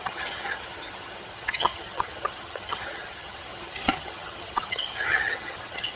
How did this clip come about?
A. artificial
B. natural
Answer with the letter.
A